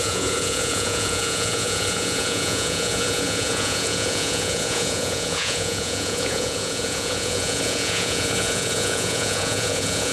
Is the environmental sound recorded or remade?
remade